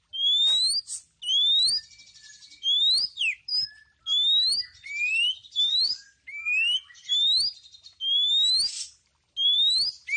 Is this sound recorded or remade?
recorded